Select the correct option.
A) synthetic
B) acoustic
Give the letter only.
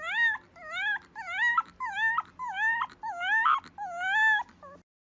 B